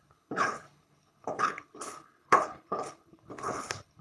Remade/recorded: remade